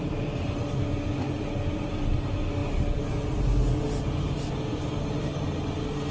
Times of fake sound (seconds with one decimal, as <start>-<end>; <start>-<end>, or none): none